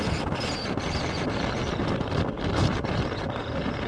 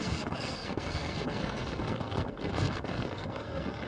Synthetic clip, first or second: second